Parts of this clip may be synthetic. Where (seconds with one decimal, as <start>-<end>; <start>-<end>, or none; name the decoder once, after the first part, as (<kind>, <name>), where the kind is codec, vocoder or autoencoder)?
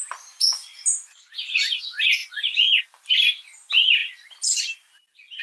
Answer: none